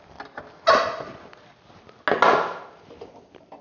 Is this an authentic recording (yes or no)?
yes